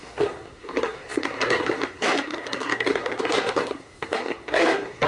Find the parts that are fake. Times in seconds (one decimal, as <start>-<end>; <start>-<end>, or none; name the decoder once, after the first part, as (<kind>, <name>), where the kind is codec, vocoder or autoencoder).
0.0-5.1 (codec, SNAC)